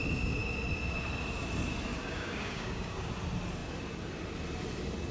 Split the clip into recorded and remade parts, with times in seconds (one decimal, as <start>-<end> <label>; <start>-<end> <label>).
0.0-1.9 recorded; 1.9-3.1 remade; 3.1-5.1 recorded